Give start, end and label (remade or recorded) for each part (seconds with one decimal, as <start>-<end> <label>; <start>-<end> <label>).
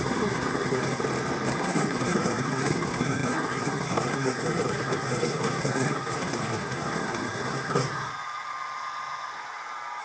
0.0-1.0 remade; 1.0-1.5 recorded; 1.5-8.1 remade; 8.1-10.0 recorded